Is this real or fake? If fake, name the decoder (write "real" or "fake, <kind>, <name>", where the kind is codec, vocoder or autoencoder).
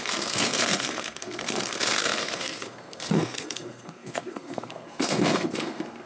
fake, codec, SNAC